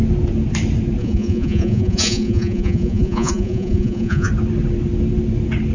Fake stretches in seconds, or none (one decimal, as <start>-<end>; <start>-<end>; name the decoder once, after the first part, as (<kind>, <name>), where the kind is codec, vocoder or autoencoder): 1.0-4.3 (vocoder, Vocos)